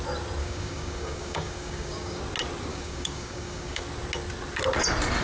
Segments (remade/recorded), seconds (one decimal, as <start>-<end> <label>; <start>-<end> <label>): 0.0-0.4 recorded; 0.4-2.2 remade; 2.2-2.7 recorded; 2.7-3.8 remade; 3.8-5.2 recorded